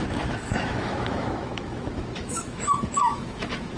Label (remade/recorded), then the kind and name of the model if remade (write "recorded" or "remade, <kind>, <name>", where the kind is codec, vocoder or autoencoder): remade, autoencoder, DAC-VAE